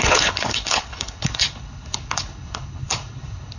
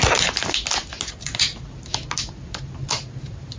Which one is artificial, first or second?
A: first